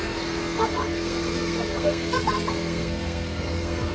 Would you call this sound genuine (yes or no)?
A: no